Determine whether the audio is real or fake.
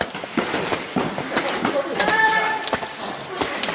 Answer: fake